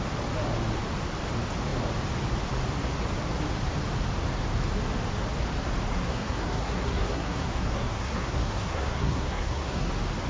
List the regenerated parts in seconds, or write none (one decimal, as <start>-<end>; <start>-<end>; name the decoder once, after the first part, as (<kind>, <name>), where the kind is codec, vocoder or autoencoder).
5.9-9.9 (codec, SNAC)